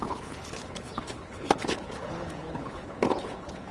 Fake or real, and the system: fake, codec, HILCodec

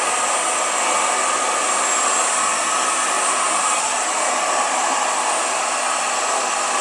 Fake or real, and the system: real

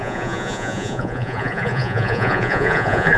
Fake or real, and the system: fake, vocoder, Vocos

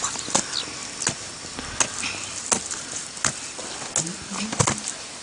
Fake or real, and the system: real